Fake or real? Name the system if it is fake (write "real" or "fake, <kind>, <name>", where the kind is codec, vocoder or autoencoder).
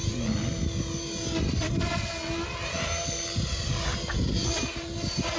real